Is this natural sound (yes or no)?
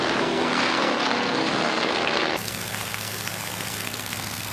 no